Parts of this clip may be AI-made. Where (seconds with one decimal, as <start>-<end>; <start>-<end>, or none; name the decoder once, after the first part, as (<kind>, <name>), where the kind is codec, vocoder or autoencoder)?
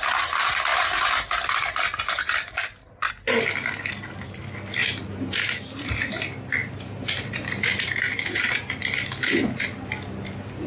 0.7-3.1 (vocoder, BigVGAN v2); 4.8-6.0; 6.6-8.5